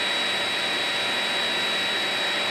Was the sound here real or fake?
real